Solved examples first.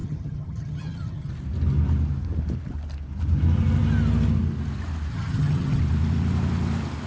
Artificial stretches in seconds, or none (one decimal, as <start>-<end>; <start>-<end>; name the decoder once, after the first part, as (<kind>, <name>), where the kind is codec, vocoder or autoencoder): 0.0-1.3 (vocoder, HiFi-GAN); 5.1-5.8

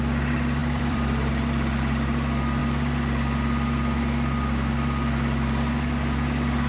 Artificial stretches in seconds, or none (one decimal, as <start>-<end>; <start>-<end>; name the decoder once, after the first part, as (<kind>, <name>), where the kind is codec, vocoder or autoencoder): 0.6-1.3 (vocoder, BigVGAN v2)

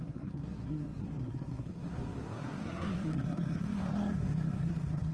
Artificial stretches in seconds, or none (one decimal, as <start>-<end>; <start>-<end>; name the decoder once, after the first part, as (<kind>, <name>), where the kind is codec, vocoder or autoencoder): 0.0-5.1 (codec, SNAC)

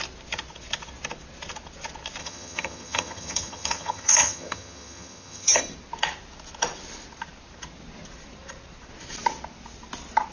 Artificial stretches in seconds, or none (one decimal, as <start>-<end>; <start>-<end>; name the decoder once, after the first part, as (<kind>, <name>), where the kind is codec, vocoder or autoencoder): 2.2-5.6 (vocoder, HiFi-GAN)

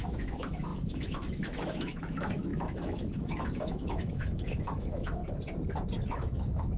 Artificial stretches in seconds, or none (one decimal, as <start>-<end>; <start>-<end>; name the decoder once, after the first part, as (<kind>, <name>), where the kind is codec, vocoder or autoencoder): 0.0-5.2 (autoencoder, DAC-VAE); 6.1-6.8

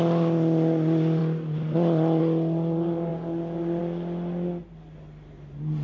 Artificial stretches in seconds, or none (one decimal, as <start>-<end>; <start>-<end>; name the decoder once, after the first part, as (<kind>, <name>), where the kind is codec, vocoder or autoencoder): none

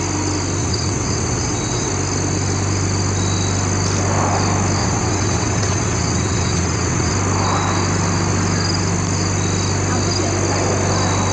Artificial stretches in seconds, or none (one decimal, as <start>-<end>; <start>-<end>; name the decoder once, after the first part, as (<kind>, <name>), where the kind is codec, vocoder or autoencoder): 0.6-1.9 (vocoder, WaveNeXt); 4.8-7.1